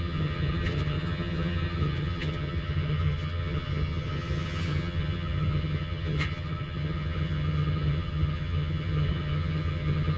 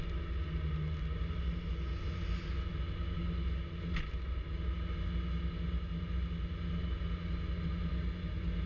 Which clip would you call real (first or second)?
second